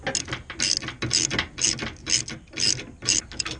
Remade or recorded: recorded